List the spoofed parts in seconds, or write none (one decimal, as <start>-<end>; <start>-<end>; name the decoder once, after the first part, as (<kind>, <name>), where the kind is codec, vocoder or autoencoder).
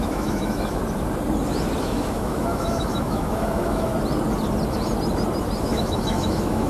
0.0-0.8 (autoencoder, DAC-VAE); 1.8-3.9; 5.6-6.7